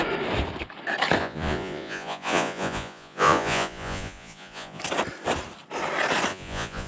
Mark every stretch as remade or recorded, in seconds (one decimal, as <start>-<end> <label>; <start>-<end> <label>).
0.0-1.2 recorded; 1.2-4.8 remade; 4.8-6.3 recorded; 6.3-6.9 remade